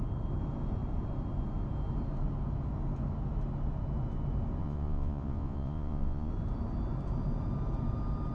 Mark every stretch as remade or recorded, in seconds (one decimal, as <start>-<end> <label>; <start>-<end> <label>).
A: 0.0-4.6 recorded; 4.6-6.3 remade; 6.3-8.3 recorded